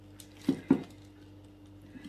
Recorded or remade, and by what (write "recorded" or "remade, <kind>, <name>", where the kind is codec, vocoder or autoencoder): recorded